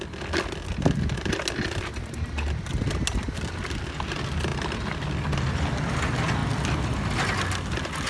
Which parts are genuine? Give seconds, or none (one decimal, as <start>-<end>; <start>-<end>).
0.0-8.1